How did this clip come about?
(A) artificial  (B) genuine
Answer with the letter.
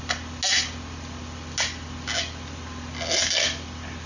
B